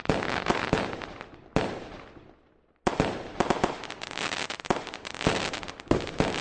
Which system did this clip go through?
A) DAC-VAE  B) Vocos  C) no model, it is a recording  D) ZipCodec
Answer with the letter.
C